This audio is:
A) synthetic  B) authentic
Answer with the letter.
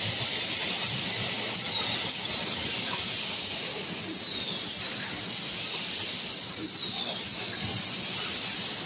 B